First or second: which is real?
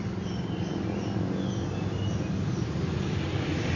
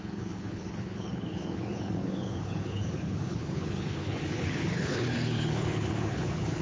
first